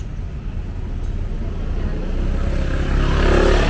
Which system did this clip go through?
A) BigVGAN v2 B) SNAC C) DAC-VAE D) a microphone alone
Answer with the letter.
D